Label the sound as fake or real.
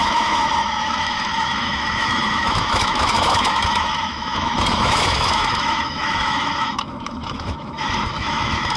fake